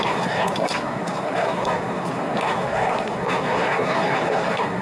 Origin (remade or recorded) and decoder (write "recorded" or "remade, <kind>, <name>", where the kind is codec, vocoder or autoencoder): remade, codec, SNAC